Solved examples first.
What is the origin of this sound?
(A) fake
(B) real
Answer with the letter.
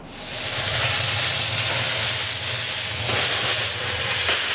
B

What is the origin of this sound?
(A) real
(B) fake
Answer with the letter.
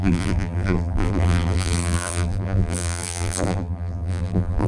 B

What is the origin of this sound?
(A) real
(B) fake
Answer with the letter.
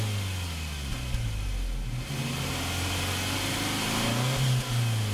A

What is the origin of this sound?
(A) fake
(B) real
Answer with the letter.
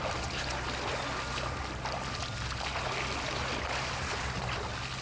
B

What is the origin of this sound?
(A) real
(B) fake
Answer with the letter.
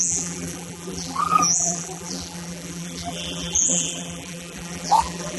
B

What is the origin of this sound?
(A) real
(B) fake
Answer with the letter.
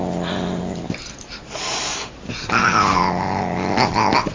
A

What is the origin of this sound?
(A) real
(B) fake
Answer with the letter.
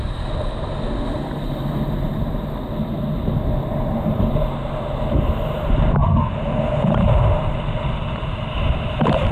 A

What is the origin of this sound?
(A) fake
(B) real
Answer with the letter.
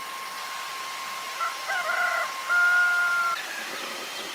B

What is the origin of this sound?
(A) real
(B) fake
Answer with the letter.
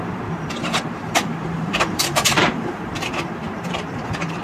B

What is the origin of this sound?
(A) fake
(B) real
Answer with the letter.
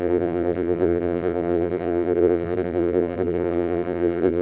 A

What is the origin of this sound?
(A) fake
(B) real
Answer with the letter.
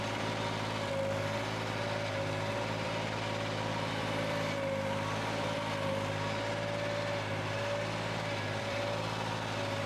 A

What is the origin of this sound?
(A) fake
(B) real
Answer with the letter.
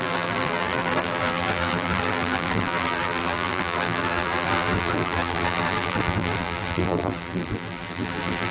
A